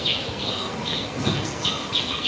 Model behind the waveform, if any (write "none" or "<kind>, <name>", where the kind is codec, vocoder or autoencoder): codec, SNAC